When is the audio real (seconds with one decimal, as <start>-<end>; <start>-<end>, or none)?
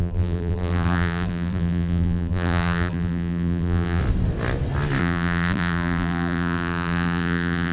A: 4.0-5.0